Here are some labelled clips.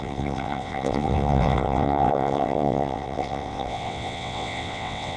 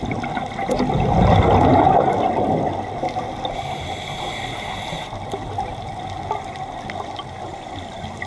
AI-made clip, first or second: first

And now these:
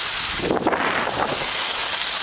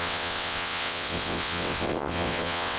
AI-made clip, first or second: second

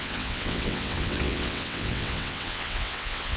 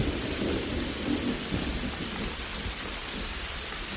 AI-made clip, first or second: first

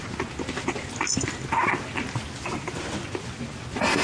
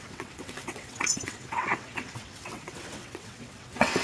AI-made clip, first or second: second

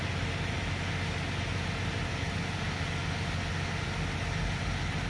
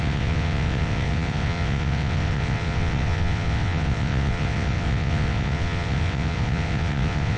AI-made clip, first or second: second